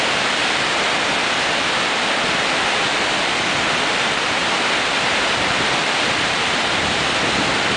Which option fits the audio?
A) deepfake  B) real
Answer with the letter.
A